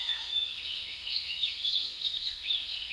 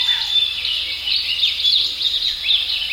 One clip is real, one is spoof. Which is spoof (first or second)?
first